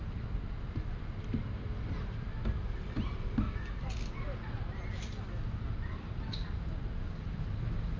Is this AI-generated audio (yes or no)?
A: no